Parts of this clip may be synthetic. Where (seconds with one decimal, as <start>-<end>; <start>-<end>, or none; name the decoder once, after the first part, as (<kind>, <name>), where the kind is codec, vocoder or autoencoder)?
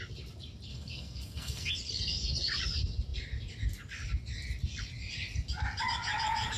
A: 0.7-1.7 (codec, SNAC)